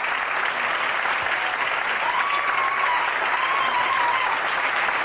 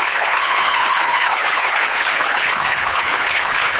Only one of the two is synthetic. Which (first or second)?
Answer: second